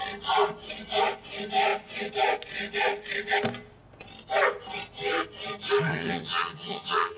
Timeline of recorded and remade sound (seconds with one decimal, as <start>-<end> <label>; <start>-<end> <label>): 0.0-5.9 recorded; 5.9-7.2 remade